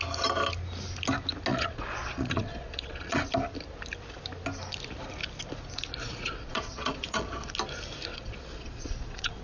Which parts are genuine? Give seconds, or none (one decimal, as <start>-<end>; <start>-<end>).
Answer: 0.0-1.5; 3.3-6.0; 7.5-8.1